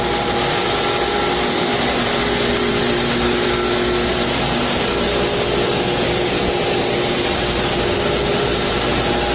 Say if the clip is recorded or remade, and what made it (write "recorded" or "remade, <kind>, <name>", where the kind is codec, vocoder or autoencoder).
recorded